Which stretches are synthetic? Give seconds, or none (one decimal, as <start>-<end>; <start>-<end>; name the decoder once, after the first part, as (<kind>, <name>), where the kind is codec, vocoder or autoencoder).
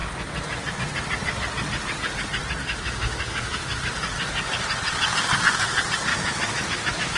2.6-3.8 (autoencoder, DAC-VAE); 6.1-7.2